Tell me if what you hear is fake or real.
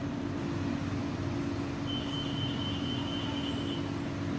real